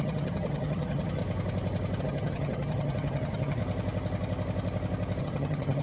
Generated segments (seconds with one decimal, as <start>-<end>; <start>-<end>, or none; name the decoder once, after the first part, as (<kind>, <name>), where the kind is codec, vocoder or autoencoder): 0.0-1.2 (vocoder, HiFi-GAN); 2.0-3.6; 5.2-5.8